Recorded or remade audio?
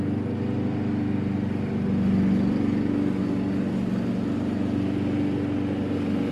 recorded